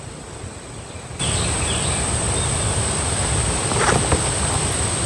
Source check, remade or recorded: recorded